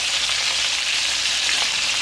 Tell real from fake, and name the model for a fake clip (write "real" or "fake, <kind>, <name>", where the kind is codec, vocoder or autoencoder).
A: fake, vocoder, BigVGAN v2